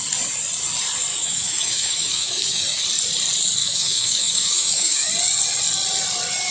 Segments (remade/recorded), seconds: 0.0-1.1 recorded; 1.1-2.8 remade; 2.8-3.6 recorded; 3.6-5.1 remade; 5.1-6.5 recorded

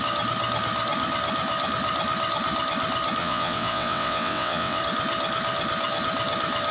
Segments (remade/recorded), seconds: 0.0-3.2 recorded; 3.2-4.8 remade; 4.8-6.7 recorded

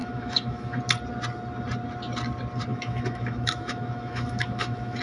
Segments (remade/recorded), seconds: 0.0-0.8 remade; 0.8-2.7 recorded; 2.7-5.0 remade

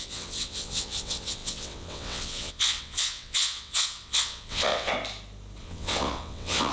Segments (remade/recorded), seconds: 0.0-4.9 remade; 4.9-5.6 recorded; 5.6-6.7 remade

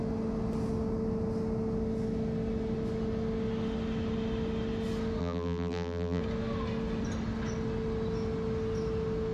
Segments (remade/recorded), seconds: 0.0-5.2 recorded; 5.2-6.2 remade; 6.2-9.3 recorded

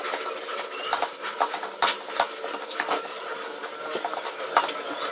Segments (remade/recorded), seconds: 0.0-5.1 recorded